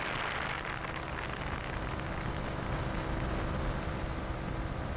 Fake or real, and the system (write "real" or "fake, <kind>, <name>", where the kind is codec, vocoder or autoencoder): real